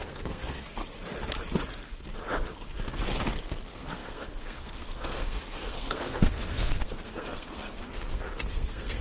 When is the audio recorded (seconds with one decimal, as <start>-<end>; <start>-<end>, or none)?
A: 0.8-3.4